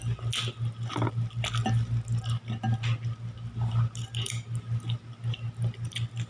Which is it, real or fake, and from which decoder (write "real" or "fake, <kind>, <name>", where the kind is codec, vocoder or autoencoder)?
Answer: real